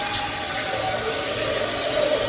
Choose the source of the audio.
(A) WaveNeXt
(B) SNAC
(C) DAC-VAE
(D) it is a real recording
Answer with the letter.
D